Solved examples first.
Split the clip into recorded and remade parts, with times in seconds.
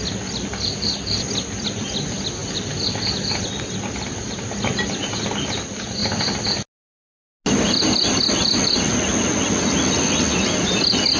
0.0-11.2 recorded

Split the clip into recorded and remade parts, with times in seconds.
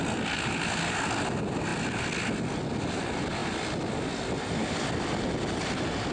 0.0-6.1 recorded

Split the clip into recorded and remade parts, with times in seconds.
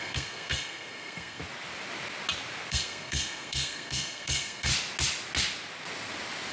0.0-1.4 remade; 1.4-2.7 recorded; 2.7-4.7 remade; 4.7-6.5 recorded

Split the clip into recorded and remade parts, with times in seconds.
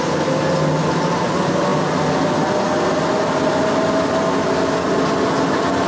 0.0-5.9 recorded